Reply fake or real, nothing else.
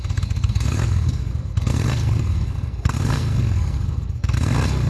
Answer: fake